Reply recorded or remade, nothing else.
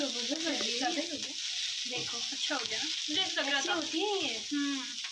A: recorded